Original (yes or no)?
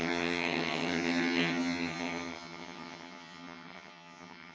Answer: no